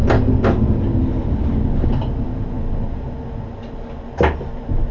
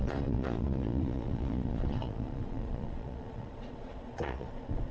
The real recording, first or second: first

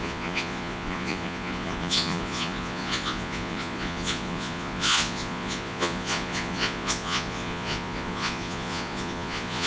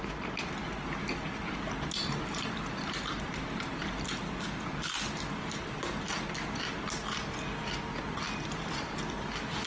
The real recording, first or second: second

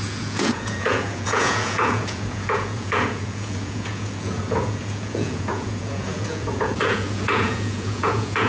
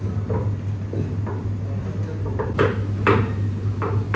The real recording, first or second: second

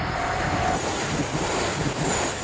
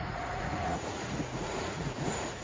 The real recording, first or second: first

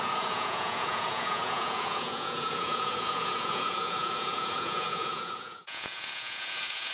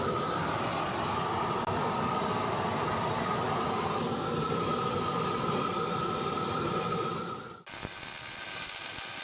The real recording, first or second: second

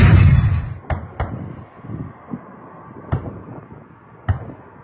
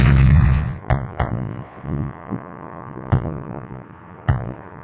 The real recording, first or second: first